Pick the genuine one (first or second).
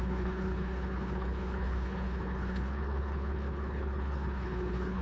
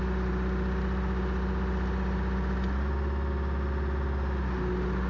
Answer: second